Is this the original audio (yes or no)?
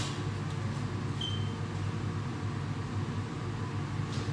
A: yes